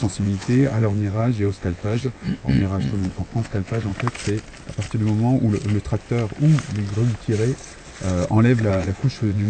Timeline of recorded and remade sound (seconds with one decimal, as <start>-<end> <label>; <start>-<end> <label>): 0.0-3.9 remade; 3.9-8.7 recorded; 8.7-9.5 remade

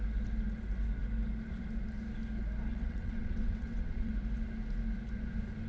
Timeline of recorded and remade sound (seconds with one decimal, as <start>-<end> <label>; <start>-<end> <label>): 0.0-2.7 recorded; 2.7-4.1 remade; 4.1-5.7 recorded